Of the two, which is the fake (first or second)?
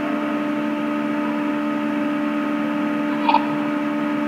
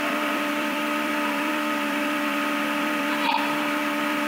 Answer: second